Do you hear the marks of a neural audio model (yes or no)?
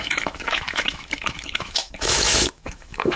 yes